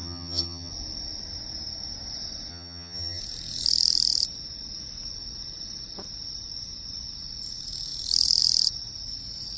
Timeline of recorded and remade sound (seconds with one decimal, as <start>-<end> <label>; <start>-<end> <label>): 0.0-0.7 remade; 0.7-2.5 recorded; 2.5-3.2 remade; 3.2-9.6 recorded